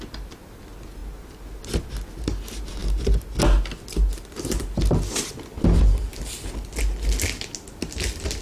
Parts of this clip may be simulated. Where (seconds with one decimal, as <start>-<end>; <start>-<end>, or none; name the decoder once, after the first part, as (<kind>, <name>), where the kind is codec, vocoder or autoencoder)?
none